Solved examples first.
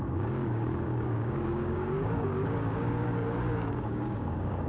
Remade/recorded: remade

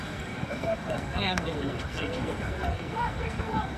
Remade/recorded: remade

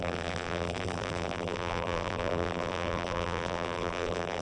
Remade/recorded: remade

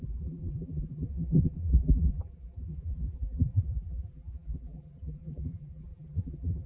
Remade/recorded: remade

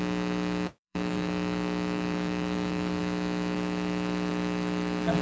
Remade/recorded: remade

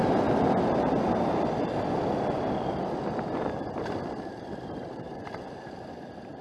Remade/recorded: recorded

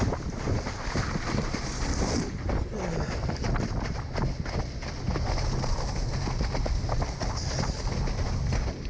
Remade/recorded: recorded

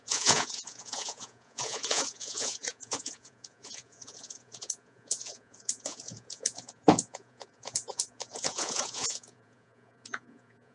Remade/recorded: remade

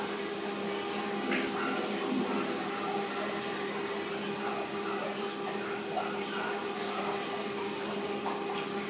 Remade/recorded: recorded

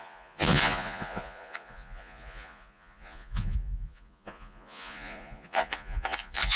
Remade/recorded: remade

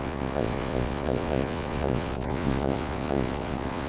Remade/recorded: remade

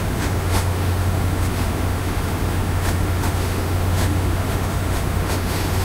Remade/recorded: remade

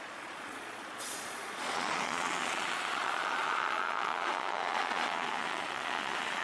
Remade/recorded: remade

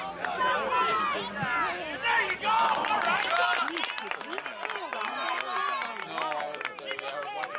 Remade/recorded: recorded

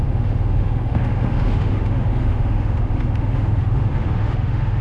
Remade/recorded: remade